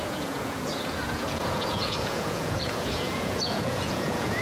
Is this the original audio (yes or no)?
no